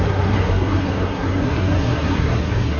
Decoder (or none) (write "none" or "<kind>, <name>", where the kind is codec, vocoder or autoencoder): codec, SNAC